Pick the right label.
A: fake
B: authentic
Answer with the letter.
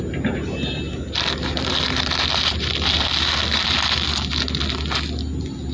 B